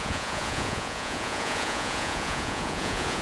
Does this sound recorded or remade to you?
remade